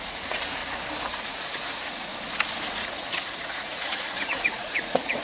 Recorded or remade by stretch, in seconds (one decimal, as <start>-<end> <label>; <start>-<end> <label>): 0.0-0.6 remade; 0.6-1.2 recorded; 1.2-2.1 remade; 2.1-2.7 recorded; 2.7-5.2 remade